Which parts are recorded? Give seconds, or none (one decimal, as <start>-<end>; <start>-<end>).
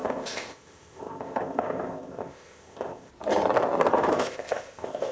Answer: 3.1-3.9